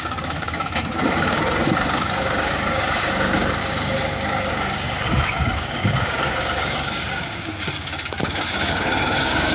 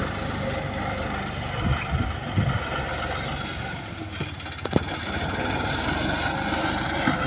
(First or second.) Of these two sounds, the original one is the second